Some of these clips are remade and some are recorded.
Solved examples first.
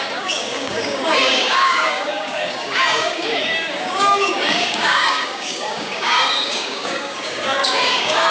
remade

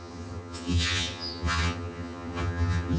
remade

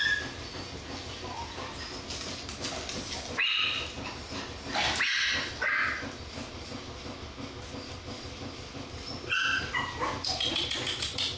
recorded